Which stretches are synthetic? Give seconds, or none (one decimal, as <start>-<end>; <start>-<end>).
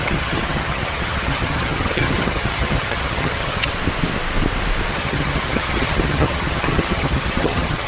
0.0-3.7; 4.9-7.9